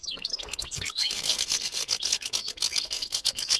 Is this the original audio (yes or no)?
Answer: no